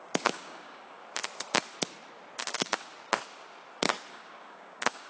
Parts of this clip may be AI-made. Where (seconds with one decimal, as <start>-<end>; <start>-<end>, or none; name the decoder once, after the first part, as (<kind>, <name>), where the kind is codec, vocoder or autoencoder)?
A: 0.0-1.0 (codec, DAC); 4.1-5.1